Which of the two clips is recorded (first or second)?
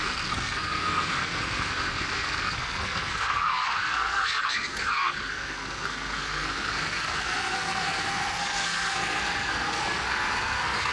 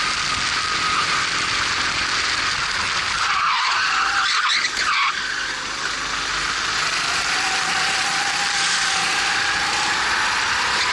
second